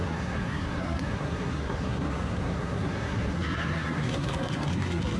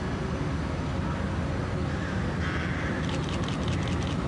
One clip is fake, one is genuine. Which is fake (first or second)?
first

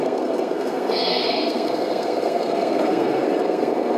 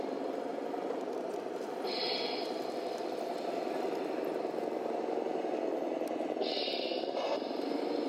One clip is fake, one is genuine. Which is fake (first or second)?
first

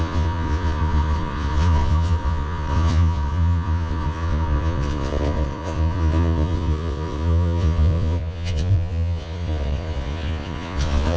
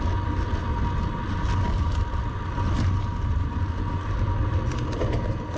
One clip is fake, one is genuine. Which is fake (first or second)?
first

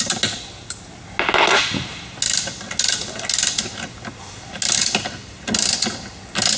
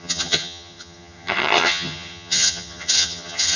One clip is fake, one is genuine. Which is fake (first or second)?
second